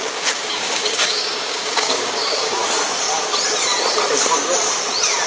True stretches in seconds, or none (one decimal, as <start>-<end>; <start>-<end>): 2.6-5.3